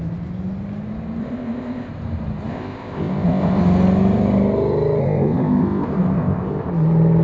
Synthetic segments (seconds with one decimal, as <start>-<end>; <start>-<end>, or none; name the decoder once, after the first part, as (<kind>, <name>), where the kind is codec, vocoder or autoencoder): 1.2-1.9 (codec, ZipCodec); 2.5-3.6; 5.0-6.7

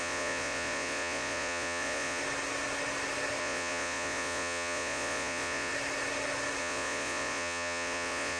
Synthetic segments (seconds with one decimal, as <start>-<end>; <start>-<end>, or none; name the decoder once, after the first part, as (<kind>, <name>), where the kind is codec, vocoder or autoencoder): 0.0-2.2 (vocoder, Vocos); 3.4-5.7; 6.6-8.4

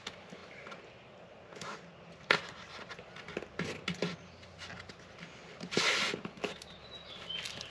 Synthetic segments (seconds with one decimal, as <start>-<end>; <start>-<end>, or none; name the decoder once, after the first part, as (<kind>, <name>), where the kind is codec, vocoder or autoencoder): none

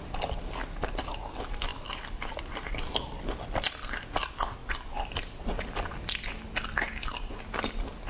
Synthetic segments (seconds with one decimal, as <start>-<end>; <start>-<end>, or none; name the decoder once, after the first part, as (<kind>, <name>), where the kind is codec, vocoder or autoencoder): none

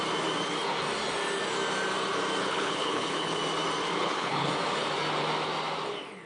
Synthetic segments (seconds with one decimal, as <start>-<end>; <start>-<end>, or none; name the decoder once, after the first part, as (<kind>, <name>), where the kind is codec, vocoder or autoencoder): 2.4-3.4 (codec, HILCodec); 4.0-4.5

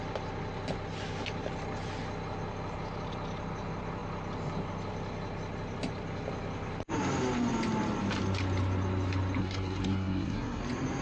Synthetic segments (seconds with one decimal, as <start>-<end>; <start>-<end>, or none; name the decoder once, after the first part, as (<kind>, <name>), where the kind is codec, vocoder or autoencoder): 9.4-10.6 (codec, SNAC)